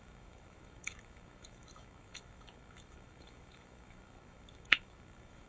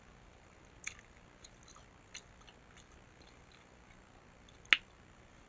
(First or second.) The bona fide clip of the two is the second